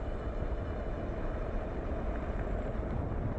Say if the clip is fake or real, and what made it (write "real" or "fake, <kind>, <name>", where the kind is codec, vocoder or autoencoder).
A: real